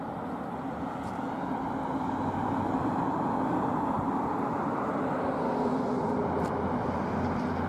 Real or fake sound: real